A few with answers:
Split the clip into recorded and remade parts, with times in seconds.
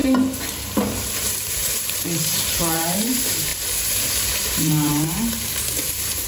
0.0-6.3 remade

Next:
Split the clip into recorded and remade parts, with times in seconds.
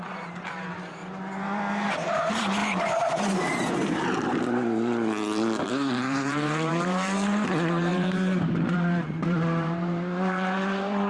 0.0-1.0 remade; 1.0-1.9 recorded; 1.9-11.1 remade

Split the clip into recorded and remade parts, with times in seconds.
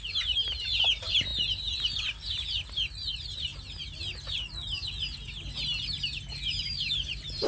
0.0-3.5 remade; 3.5-6.6 recorded; 6.6-7.5 remade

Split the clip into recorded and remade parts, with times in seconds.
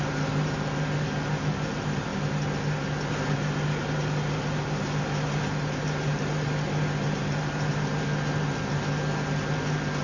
0.0-10.0 recorded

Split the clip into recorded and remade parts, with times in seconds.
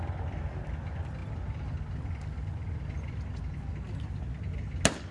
0.0-5.1 recorded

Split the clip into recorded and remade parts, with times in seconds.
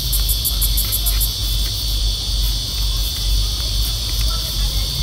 0.0-3.0 recorded; 3.0-5.0 remade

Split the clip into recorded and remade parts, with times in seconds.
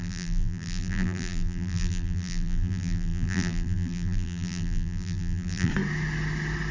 0.0-5.7 remade; 5.7-6.7 recorded